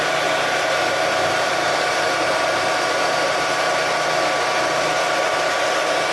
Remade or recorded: remade